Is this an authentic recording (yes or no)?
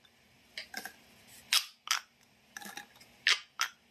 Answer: yes